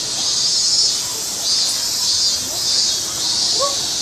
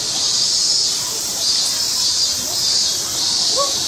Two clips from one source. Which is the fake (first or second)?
second